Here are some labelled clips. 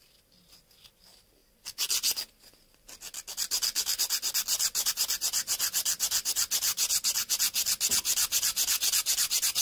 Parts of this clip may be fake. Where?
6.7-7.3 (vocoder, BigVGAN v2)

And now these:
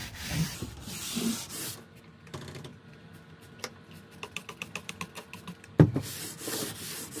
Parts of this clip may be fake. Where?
0.0-2.0 (vocoder, BigVGAN v2); 2.7-4.9

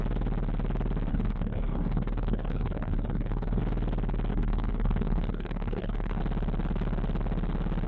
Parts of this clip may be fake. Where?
1.1-3.6 (codec, DAC); 4.3-6.2

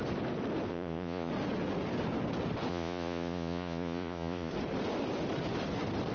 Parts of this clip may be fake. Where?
0.7-1.3 (vocoder, Vocos); 2.7-4.5